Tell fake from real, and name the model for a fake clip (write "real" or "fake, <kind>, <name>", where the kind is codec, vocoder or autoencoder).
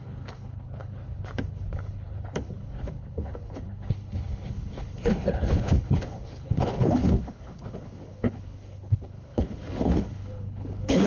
fake, codec, HILCodec